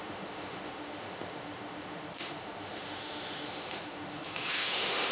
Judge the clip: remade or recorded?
remade